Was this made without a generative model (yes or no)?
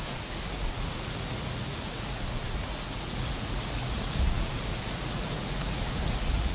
no